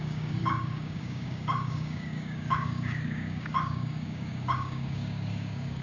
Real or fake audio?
fake